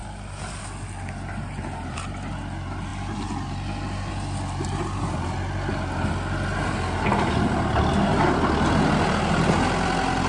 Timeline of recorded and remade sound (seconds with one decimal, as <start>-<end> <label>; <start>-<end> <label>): 0.0-10.3 recorded